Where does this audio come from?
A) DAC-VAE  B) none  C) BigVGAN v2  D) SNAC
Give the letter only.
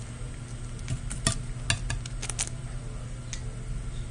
B